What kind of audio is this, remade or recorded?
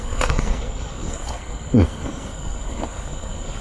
remade